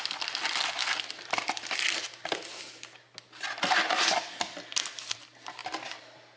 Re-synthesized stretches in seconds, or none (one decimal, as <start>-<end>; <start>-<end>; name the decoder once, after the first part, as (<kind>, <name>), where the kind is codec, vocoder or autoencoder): none